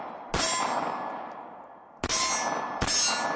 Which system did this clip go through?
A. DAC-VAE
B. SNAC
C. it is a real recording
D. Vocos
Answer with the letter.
C